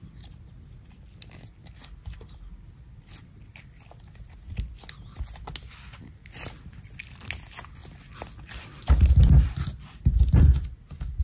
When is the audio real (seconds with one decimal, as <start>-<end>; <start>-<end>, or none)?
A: 0.0-7.8; 10.6-11.2